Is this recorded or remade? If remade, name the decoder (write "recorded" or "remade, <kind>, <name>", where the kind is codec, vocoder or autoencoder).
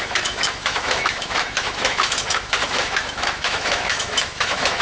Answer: remade, autoencoder, DAC-VAE